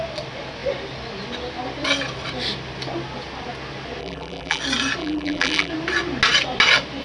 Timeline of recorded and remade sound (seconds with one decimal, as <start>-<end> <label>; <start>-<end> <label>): 0.0-4.0 recorded; 4.0-4.6 remade; 4.6-5.0 recorded; 5.0-5.7 remade; 5.7-7.0 recorded